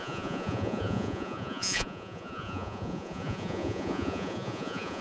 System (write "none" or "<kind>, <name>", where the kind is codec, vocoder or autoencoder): vocoder, Vocos